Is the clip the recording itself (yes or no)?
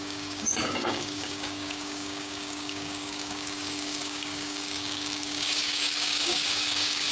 no